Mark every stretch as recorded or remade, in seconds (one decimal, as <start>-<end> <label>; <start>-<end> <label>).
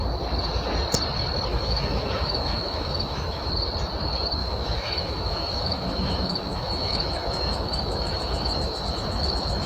0.0-1.5 recorded; 1.5-3.5 remade; 3.5-4.4 recorded; 4.4-9.7 remade